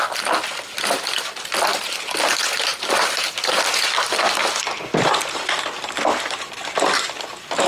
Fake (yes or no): no